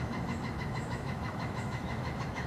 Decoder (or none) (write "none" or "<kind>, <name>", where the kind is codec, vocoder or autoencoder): autoencoder, DAC-VAE